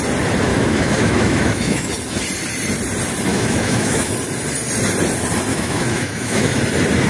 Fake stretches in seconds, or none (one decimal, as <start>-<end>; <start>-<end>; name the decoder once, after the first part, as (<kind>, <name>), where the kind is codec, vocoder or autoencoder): 0.5-1.9 (autoencoder, DAC-VAE); 3.3-4.1; 5.5-6.6